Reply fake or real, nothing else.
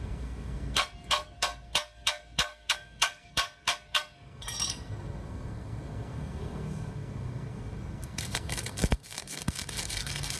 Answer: fake